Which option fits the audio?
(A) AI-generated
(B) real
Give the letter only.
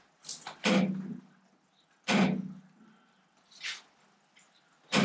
B